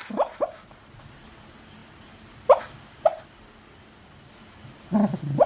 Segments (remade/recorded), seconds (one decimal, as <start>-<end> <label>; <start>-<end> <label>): 0.0-5.5 recorded